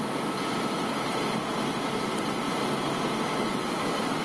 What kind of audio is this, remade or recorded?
recorded